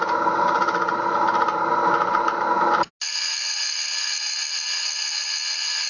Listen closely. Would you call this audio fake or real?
real